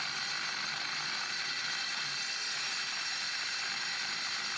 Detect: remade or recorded recorded